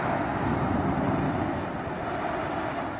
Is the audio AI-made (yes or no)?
no